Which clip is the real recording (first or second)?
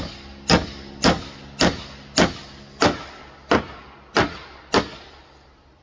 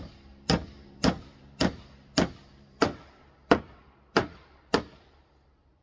first